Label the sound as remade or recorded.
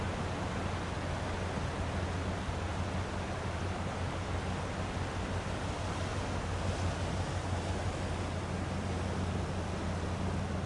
recorded